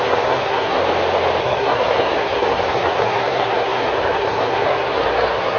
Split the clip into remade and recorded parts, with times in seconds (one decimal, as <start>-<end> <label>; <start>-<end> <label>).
0.0-0.8 remade; 0.8-1.4 recorded; 1.4-5.6 remade